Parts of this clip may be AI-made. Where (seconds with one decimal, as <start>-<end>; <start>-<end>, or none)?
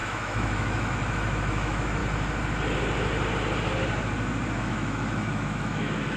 0.0-2.0; 4.6-6.2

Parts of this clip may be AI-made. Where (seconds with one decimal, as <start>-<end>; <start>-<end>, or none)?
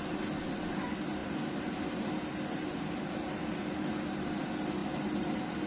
none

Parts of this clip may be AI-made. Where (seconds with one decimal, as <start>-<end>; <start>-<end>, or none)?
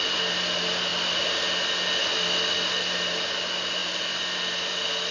none